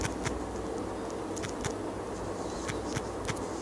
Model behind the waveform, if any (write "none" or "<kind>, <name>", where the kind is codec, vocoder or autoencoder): none